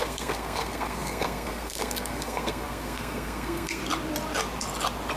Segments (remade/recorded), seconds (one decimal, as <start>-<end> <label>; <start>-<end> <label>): 0.0-3.8 remade; 3.8-5.2 recorded